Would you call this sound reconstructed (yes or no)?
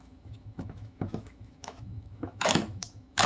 yes